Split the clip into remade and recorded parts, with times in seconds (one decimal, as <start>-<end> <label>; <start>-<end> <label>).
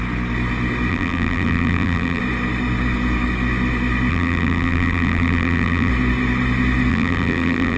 0.0-0.9 recorded; 0.9-2.2 remade; 2.2-4.1 recorded; 4.1-5.9 remade; 5.9-6.9 recorded; 6.9-7.8 remade